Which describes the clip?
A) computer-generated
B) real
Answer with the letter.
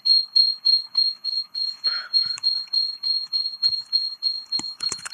A